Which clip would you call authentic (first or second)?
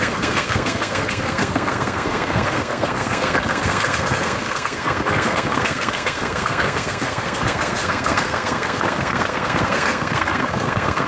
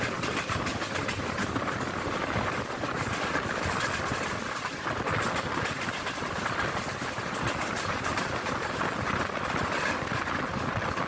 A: second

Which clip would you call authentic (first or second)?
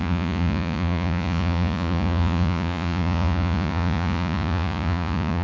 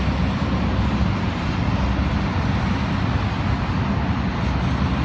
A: second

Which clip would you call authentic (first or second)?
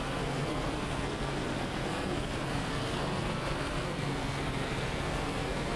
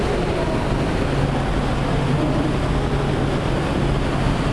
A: second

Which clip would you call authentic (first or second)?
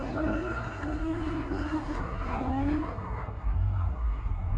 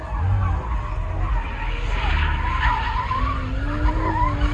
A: second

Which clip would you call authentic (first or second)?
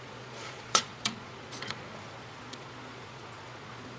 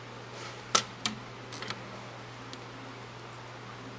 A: second